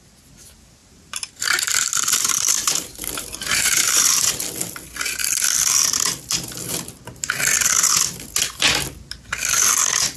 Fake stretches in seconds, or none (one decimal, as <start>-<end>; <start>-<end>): 0.8-4.2